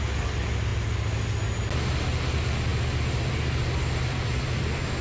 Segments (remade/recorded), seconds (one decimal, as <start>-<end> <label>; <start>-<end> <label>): 0.0-5.0 recorded